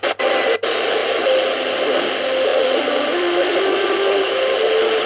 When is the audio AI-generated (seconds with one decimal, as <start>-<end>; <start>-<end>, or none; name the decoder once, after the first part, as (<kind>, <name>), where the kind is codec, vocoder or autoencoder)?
2.5-4.3 (vocoder, BigVGAN v2)